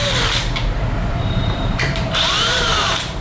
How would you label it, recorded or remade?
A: remade